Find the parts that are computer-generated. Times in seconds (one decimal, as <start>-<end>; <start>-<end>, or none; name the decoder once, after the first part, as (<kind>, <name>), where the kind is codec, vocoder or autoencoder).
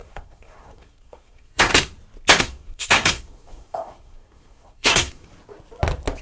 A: 0.0-1.7 (codec, SNAC); 2.4-5.3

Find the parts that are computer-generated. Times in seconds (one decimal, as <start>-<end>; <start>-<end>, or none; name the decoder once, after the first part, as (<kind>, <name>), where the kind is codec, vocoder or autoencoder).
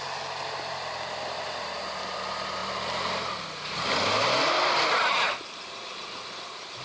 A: none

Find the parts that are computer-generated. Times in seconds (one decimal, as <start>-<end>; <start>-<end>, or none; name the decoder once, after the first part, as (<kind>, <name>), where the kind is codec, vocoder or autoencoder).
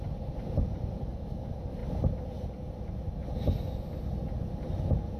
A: none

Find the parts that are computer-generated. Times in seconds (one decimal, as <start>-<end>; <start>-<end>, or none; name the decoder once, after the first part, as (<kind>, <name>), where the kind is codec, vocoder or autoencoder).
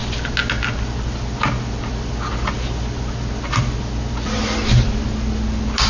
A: none